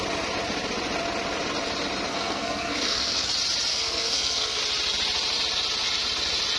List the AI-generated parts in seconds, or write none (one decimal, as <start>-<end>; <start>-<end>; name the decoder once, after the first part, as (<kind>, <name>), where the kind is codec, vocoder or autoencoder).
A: 2.1-3.3 (codec, SNAC); 3.7-4.6